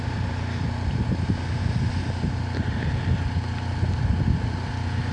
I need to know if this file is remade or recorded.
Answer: recorded